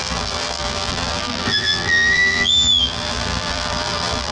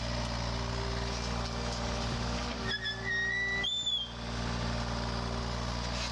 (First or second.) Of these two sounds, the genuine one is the second